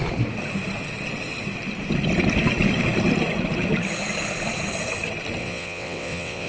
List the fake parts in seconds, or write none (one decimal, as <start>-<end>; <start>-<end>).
5.4-6.5